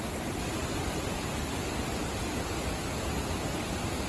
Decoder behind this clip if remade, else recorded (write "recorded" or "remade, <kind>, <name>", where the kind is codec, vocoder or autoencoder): recorded